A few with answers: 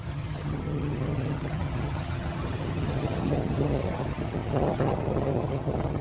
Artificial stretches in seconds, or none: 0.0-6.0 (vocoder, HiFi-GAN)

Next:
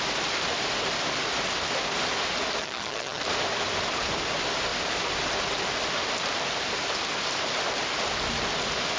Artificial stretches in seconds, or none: 2.6-3.2 (vocoder, HiFi-GAN)

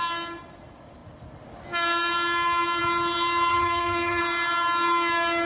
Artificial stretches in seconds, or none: 3.5-4.2 (vocoder, HiFi-GAN)

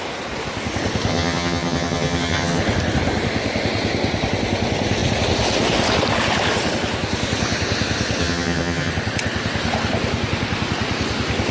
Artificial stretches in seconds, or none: 1.1-2.6 (vocoder, HiFi-GAN); 8.2-8.9

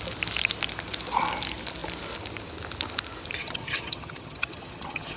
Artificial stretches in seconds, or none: 3.4-5.2 (vocoder, HiFi-GAN)